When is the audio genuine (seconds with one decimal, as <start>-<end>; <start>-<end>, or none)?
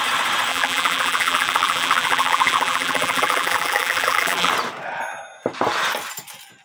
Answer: 0.0-0.5; 4.5-6.6